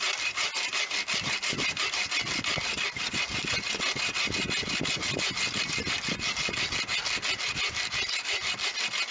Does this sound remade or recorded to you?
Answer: recorded